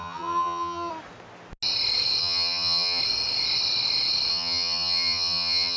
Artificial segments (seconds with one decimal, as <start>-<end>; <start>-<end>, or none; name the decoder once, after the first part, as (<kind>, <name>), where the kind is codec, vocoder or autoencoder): 0.0-0.9 (vocoder, HiFi-GAN); 2.2-3.0; 4.3-5.8